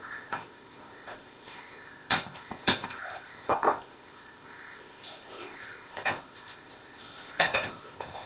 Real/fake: fake